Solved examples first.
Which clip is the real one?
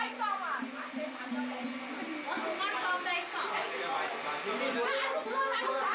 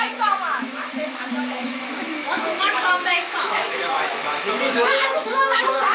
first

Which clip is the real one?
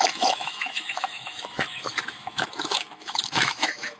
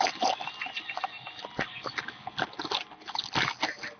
second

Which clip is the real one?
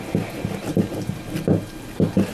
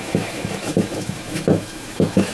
first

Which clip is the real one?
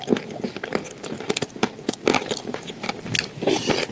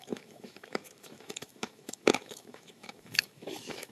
first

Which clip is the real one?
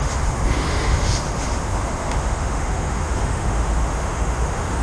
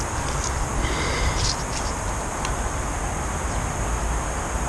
second